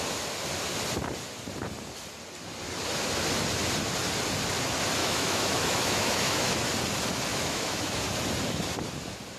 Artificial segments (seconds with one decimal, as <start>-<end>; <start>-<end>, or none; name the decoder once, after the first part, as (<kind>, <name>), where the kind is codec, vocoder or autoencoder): 5.0-6.6 (autoencoder, DAC-VAE); 7.3-7.9

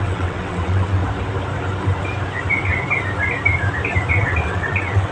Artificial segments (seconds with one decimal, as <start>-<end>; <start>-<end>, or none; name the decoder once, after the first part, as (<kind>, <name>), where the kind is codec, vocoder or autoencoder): 0.0-1.0 (vocoder, WaveNeXt); 4.1-5.1

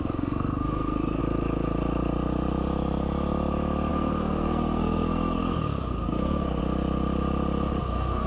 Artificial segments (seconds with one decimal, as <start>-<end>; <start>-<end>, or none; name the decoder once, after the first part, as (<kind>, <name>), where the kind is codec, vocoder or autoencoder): 0.0-1.2 (codec, SNAC); 3.9-6.6; 7.8-8.3

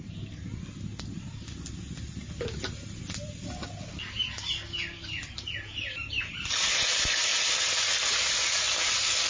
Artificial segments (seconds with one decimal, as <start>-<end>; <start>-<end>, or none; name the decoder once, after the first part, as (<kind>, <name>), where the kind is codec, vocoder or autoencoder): none

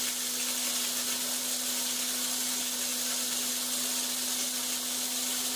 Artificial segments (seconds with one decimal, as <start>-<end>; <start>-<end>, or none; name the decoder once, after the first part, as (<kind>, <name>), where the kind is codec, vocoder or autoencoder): none

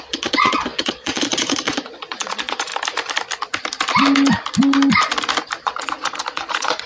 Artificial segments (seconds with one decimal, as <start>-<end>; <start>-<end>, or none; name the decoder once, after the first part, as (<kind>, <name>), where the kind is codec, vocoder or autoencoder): 0.0-2.7 (vocoder, Vocos); 5.6-6.9

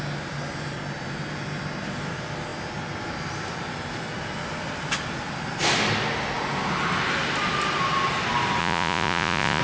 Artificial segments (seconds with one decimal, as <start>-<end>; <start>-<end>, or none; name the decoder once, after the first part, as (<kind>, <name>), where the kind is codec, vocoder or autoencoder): 8.6-9.6 (vocoder, Vocos)

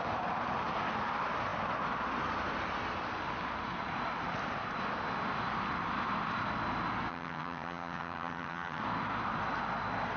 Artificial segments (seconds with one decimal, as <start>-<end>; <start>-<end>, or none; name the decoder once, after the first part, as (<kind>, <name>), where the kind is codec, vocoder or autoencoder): 7.1-8.8 (vocoder, HiFi-GAN)